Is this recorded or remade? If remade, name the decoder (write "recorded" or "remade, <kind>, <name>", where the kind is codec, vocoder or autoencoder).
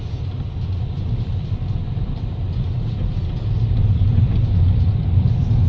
recorded